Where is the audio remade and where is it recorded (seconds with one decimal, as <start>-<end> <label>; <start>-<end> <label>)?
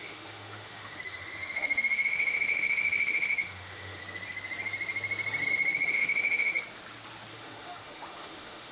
0.0-4.0 remade; 4.0-5.9 recorded; 5.9-6.5 remade; 6.5-7.3 recorded; 7.3-8.7 remade